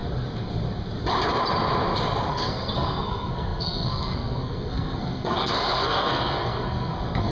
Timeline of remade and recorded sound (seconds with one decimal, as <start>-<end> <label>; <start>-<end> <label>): 0.0-2.3 recorded; 2.3-7.3 remade